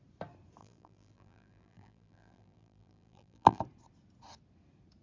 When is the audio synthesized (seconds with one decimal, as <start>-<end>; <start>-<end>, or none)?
0.6-3.6